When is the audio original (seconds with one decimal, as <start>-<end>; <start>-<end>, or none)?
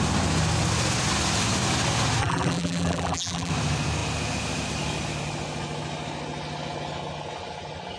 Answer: 0.0-2.2; 3.5-8.0